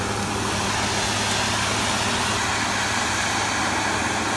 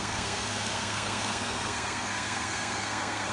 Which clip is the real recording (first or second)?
first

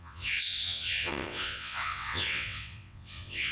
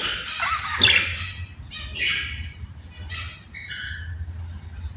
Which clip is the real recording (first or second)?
second